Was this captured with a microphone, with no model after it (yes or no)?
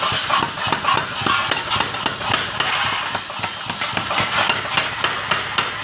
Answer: yes